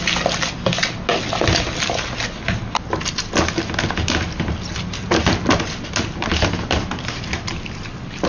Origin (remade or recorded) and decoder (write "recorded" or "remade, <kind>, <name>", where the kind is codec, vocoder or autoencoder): recorded